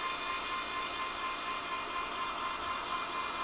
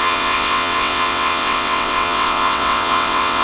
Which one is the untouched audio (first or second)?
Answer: first